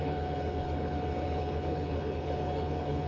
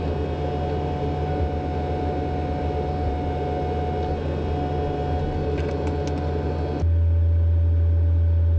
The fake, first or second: first